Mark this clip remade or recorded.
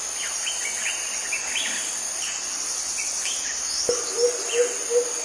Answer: recorded